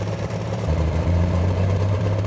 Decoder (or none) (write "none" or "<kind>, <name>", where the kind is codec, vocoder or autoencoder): vocoder, BigVGAN v2